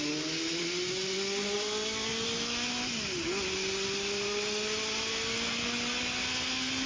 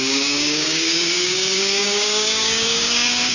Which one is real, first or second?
first